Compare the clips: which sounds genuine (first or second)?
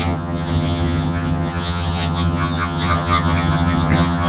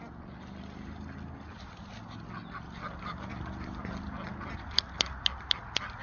second